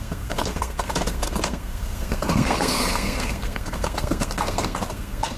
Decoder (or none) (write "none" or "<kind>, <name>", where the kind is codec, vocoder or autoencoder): codec, SNAC